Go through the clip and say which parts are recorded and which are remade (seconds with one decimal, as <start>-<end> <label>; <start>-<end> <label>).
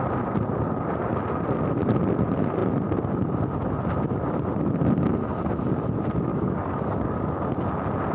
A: 0.0-6.3 recorded; 6.3-7.4 remade; 7.4-8.1 recorded